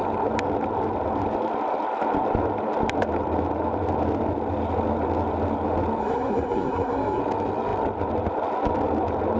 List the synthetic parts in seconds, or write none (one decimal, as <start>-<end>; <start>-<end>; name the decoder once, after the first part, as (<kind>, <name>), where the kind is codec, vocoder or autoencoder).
6.0-7.2 (codec, SNAC)